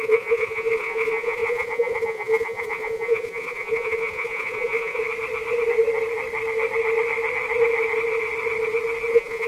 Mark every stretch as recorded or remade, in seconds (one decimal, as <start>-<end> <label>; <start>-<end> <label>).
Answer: 0.0-5.0 remade; 5.0-9.1 recorded; 9.1-9.5 remade